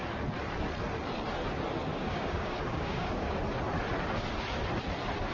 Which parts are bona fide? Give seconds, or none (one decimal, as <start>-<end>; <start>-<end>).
0.0-1.9; 3.4-5.3